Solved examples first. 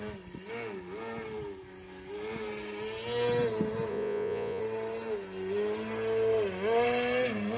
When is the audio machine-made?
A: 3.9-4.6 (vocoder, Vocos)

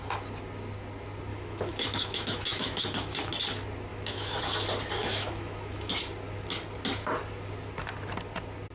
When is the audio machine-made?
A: 1.3-3.3 (autoencoder, DAC-VAE); 3.9-4.4; 5.0-6.0

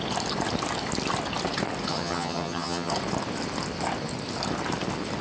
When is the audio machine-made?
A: 1.9-2.9 (vocoder, HiFi-GAN)

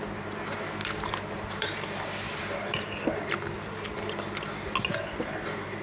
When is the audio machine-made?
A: 0.8-4.3 (vocoder, BigVGAN v2)

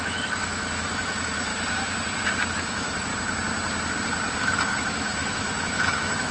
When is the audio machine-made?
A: 0.0-1.5 (autoencoder, DAC-VAE); 2.5-3.1; 4.4-6.3

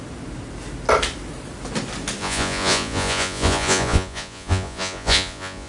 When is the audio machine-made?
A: 2.2-5.7 (vocoder, Vocos)

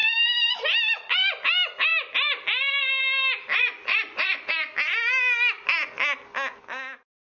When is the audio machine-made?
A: 3.5-4.5 (vocoder, Vocos)